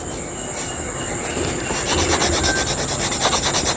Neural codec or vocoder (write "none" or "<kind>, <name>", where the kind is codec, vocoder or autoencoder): none